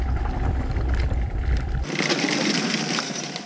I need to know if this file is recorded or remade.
recorded